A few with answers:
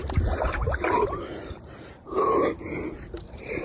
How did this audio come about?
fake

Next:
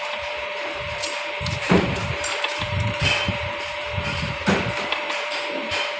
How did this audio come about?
fake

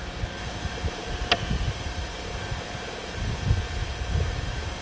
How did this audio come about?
real